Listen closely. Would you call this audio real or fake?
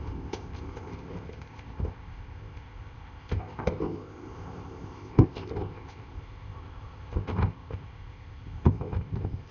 fake